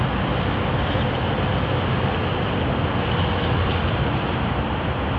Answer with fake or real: real